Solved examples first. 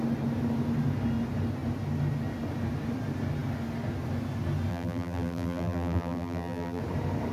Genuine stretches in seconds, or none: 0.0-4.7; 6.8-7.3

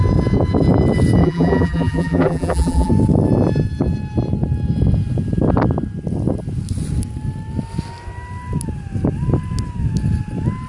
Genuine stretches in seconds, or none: 0.0-1.2; 2.9-10.7

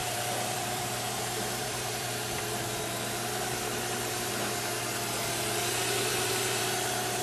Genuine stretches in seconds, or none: 2.8-7.2